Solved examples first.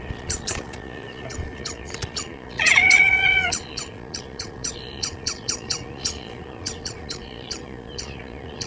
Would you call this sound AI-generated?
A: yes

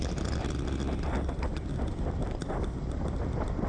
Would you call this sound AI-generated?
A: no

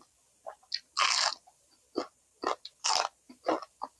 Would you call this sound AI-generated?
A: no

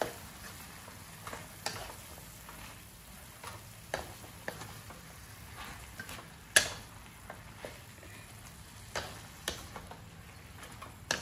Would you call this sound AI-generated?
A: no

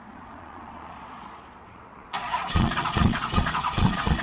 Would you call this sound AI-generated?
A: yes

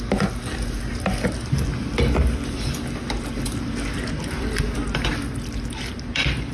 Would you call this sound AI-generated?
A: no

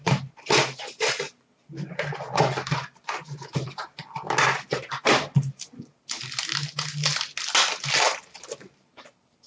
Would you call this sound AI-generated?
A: no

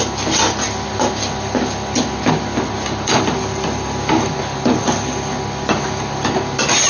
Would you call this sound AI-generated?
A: no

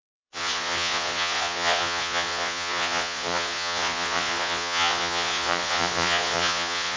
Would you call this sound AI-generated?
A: yes